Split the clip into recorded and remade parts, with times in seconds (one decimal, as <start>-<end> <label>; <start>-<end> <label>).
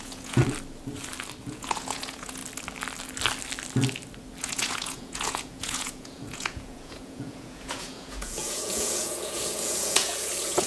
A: 0.0-0.4 remade; 0.4-1.4 recorded; 1.4-2.4 remade; 2.4-4.4 recorded; 4.4-10.7 remade